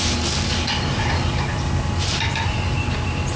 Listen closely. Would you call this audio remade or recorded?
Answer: recorded